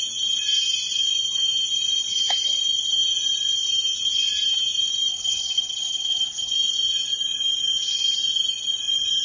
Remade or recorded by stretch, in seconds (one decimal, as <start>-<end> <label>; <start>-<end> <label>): 0.0-5.1 recorded; 5.1-6.5 remade; 6.5-9.2 recorded